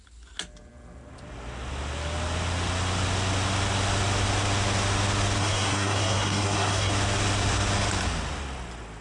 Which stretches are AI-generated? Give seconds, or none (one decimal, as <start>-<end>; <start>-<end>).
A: 5.4-6.9